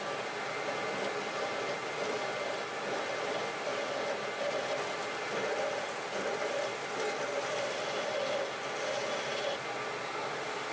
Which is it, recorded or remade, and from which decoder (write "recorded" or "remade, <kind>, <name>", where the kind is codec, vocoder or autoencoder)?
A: recorded